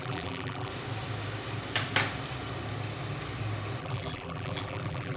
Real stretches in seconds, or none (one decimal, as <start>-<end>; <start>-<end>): 0.7-3.8